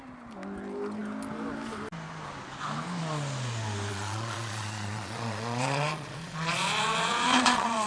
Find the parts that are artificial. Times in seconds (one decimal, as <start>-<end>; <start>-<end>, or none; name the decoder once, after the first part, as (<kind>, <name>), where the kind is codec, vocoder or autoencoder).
3.9-7.9 (vocoder, Vocos)